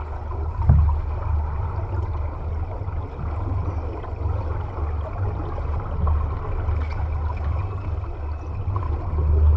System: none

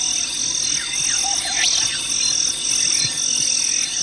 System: none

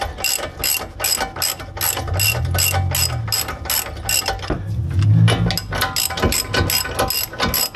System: none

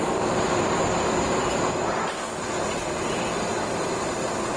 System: none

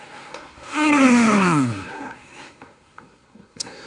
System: codec, SNAC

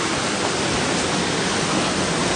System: none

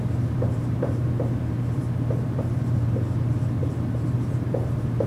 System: vocoder, BigVGAN v2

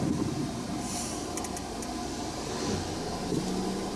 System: none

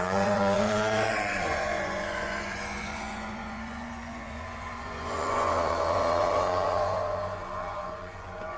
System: vocoder, Vocos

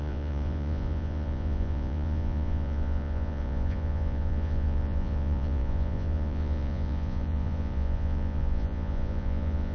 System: vocoder, Vocos